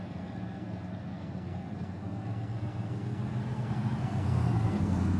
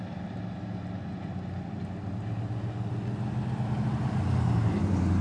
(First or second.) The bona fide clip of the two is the second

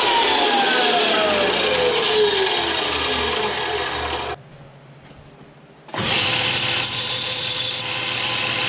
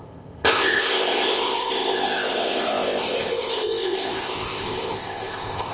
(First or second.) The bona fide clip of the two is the first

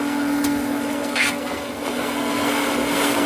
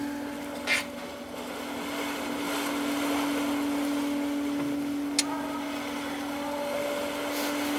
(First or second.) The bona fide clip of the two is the second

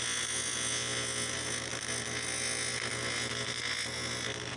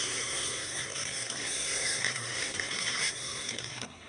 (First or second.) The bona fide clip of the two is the first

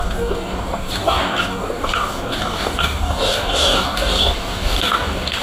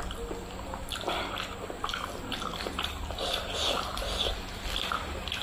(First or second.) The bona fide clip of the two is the second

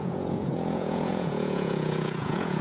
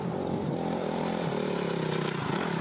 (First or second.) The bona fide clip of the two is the second